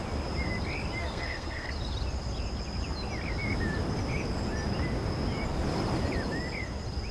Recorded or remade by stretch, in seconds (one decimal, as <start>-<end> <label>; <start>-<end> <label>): 0.0-1.0 recorded; 1.0-1.7 remade; 1.7-7.1 recorded